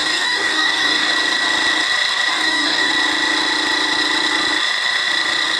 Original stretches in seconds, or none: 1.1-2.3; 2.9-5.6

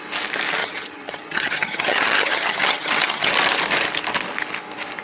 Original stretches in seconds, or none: 0.0-0.6; 3.3-5.0

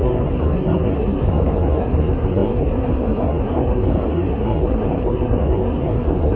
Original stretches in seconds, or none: none